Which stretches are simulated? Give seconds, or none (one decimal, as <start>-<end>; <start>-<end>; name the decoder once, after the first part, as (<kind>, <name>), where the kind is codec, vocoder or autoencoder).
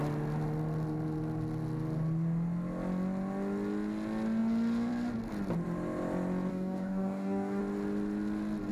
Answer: 6.5-7.6 (codec, DAC)